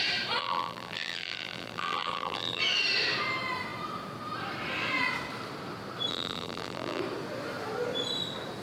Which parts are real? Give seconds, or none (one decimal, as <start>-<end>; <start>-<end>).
0.0-0.4; 2.6-6.1; 7.0-8.6